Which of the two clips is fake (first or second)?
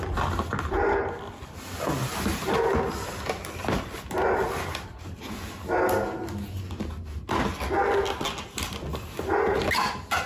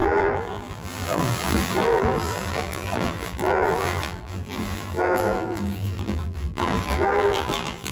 second